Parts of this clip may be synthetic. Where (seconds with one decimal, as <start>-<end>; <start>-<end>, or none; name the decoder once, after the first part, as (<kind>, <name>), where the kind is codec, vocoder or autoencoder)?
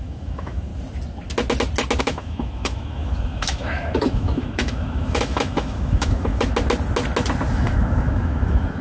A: 0.0-0.7 (autoencoder, DAC-VAE); 2.0-6.5; 7.5-8.8